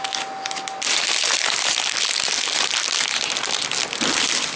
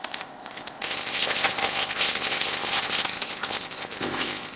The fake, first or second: second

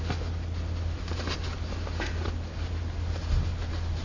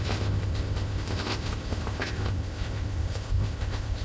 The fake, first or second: second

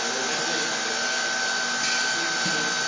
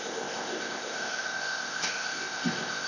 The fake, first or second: second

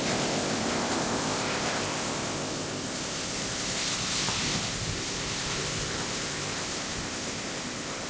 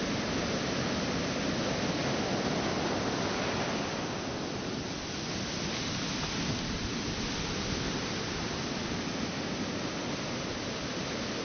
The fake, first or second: first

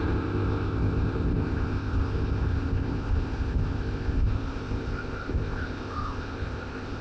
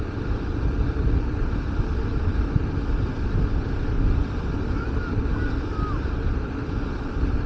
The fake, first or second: first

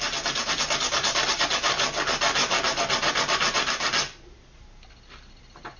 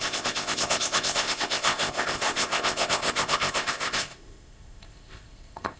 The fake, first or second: second